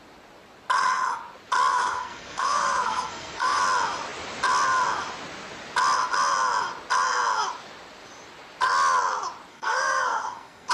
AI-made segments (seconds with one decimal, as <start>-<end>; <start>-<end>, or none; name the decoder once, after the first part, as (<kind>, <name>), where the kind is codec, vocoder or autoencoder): 1.7-3.6 (codec, SNAC); 9.5-10.7